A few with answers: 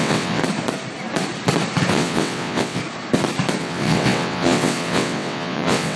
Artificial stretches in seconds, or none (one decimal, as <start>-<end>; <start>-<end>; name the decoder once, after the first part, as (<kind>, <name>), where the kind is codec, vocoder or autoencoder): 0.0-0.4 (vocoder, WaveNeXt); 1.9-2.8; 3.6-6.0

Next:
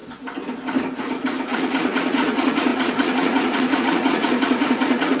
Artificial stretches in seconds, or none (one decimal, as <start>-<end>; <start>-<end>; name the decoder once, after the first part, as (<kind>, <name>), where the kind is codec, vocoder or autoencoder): 1.0-5.2 (vocoder, Vocos)

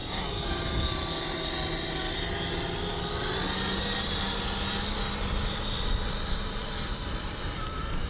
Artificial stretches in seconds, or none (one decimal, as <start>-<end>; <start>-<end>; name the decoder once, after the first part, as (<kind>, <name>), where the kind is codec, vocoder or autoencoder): 4.7-8.1 (vocoder, BigVGAN v2)